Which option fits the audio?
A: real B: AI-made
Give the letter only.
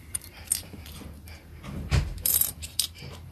B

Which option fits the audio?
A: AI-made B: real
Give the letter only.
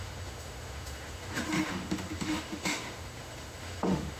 A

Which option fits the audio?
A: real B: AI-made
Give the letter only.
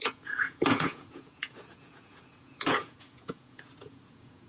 B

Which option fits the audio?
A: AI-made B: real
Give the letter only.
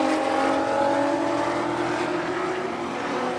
B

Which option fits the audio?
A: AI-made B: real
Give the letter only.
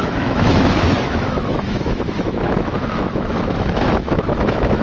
A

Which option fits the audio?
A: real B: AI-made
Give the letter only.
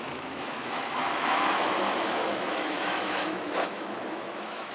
B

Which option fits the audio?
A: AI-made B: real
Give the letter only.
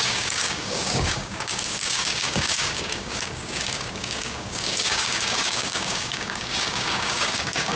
A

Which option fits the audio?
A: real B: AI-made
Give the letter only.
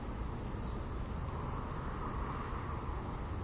A